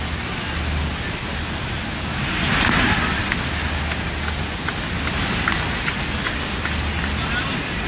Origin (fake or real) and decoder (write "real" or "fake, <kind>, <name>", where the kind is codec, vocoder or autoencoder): real